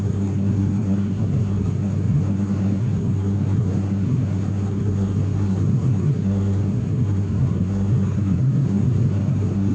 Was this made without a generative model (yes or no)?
no